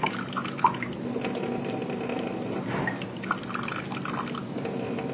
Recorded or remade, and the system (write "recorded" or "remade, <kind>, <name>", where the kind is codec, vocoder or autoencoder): recorded